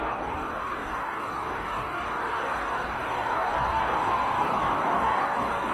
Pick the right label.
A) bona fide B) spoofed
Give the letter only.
B